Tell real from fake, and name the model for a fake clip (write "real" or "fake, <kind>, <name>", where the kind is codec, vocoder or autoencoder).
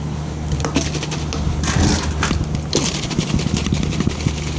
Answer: real